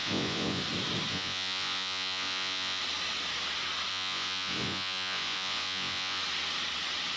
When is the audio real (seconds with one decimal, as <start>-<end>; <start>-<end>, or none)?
0.6-1.1; 2.8-3.9; 6.2-7.2